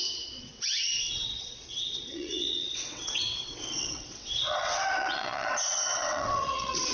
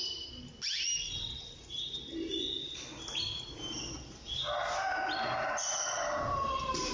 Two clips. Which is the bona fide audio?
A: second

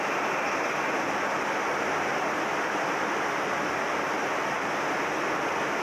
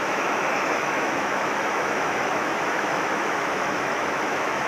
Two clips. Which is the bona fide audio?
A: first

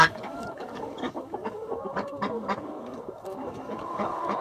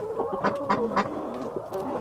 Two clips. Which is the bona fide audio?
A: second